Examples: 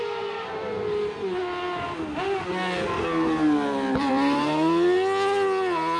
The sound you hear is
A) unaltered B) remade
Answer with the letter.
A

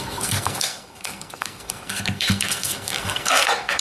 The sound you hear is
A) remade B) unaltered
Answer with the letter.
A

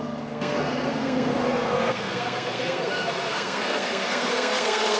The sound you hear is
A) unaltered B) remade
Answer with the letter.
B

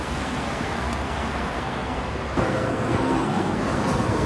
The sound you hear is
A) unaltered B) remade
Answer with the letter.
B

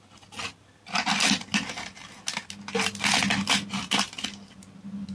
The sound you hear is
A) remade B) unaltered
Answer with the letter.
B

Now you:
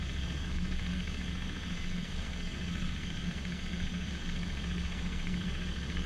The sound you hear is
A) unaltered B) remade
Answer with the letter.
B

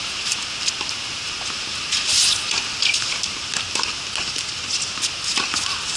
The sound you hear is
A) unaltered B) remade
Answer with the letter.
A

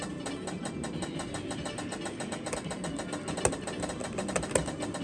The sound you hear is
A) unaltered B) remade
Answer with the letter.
A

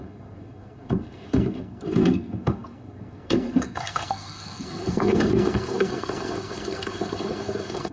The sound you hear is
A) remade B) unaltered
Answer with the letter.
A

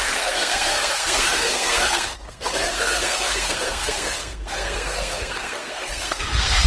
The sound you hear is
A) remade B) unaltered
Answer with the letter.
A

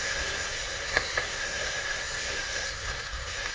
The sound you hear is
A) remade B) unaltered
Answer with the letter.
A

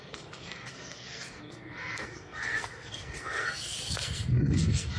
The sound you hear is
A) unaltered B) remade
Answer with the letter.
B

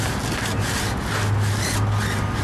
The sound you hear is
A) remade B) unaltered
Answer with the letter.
B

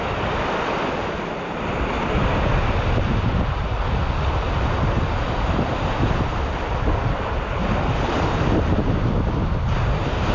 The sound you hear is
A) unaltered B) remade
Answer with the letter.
A